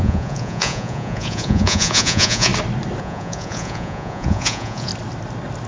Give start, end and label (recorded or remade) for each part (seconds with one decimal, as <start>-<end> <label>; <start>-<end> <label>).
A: 0.0-2.5 remade; 2.5-3.0 recorded; 3.0-4.9 remade; 4.9-5.7 recorded